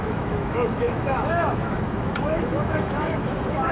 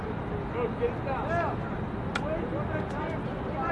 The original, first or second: second